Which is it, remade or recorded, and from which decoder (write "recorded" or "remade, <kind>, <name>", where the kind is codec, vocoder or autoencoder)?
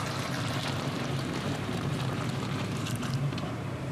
remade, vocoder, BigVGAN v2